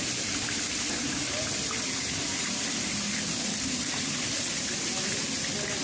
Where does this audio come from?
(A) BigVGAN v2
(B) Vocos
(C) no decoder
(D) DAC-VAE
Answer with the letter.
C